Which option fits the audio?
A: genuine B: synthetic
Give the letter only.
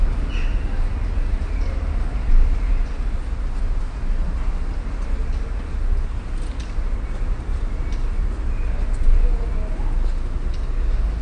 A